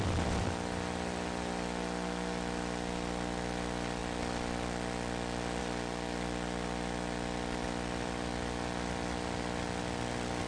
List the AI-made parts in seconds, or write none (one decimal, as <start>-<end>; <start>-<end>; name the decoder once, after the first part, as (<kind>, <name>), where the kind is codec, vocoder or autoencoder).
none